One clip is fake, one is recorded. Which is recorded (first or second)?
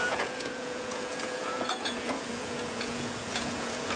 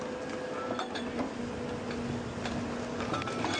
second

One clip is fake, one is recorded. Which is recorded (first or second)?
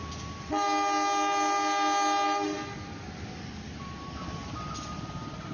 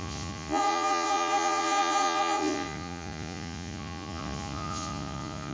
first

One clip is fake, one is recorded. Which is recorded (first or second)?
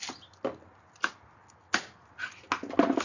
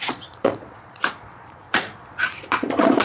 first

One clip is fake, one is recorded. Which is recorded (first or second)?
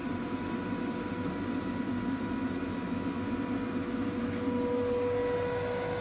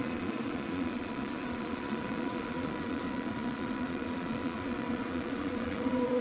first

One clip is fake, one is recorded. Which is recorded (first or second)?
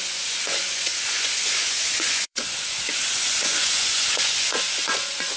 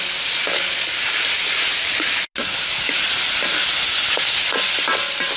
second